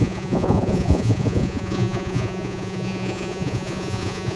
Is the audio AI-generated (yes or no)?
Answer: yes